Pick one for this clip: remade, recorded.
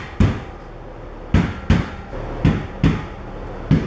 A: recorded